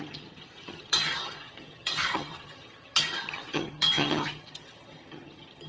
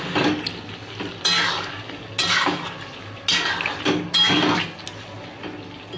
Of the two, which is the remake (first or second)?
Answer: first